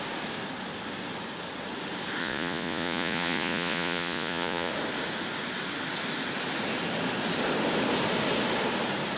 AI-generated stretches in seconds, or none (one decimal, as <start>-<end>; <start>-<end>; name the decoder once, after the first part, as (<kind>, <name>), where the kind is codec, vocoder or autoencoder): 2.2-4.7 (vocoder, Vocos)